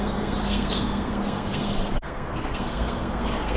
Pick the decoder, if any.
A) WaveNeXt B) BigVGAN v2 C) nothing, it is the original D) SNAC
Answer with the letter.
D